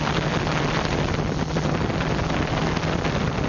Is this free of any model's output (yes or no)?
yes